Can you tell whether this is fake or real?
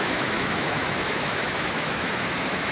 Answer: fake